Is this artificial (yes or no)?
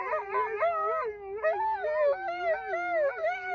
no